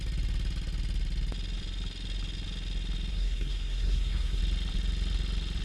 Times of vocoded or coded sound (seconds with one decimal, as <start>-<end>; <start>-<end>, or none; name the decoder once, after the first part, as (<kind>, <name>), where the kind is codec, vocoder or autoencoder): 3.1-4.4 (codec, SNAC)